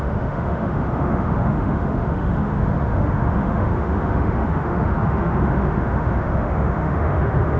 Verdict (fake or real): fake